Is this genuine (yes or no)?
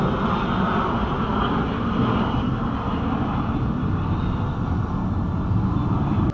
yes